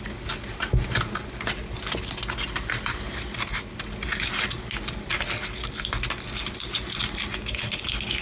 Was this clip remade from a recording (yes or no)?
no